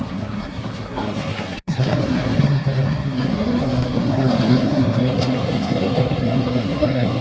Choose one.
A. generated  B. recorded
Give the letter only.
A